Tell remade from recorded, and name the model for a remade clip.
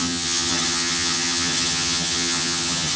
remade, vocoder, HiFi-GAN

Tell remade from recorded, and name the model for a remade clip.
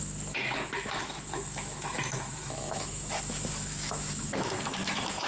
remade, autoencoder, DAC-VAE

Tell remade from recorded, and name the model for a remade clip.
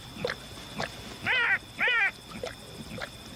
recorded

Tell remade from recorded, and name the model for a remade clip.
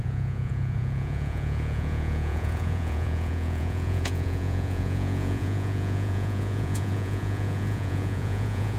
remade, vocoder, Vocos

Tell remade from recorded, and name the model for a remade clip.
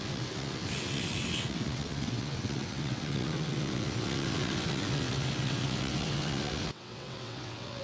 remade, vocoder, WaveNeXt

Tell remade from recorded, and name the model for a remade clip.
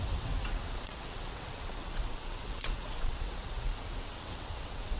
remade, vocoder, WaveNeXt